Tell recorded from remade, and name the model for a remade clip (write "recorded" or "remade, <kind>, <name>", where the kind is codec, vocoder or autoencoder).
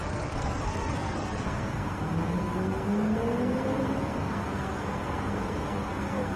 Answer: remade, codec, SNAC